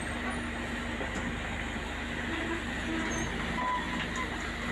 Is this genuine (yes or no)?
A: yes